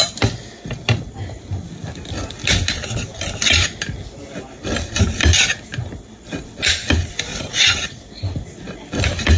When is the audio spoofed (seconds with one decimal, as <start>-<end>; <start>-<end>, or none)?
7.3-8.0